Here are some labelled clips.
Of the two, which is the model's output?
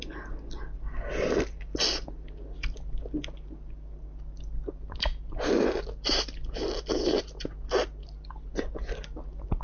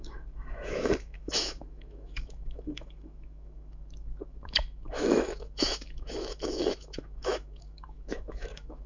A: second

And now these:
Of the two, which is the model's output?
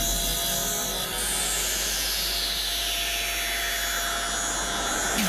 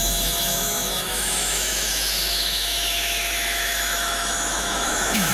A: second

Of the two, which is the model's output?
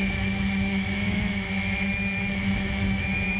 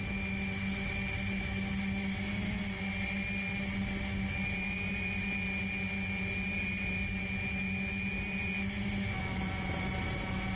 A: first